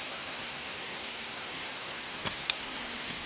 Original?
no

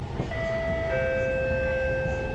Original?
yes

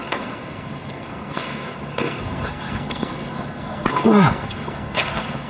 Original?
no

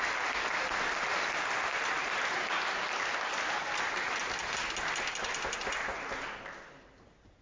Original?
yes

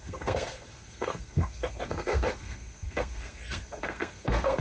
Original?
no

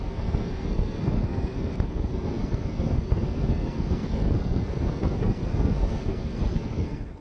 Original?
no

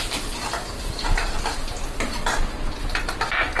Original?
yes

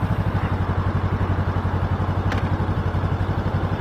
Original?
yes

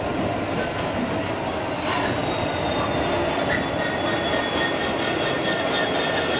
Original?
yes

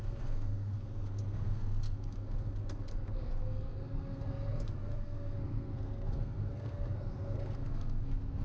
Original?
no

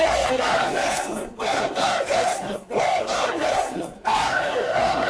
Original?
no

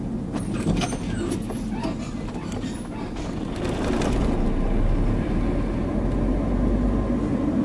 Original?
yes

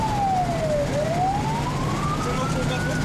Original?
yes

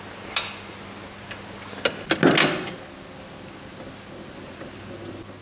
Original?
yes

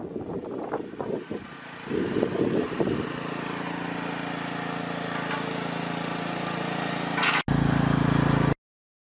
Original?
yes